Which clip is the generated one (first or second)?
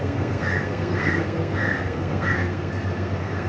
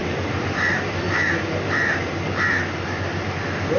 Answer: first